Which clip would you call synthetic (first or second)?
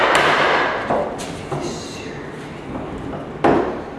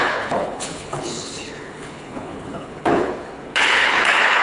second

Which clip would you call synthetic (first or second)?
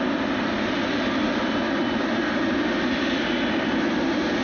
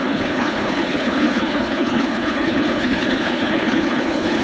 second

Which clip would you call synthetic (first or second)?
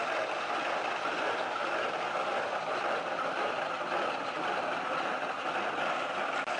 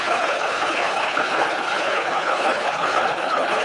second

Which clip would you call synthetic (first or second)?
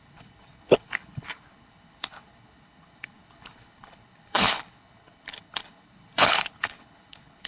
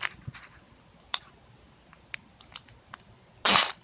first